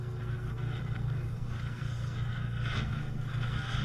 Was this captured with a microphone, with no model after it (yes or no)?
no